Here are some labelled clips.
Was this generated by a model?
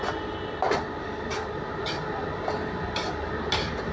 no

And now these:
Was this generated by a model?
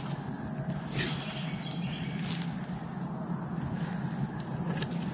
no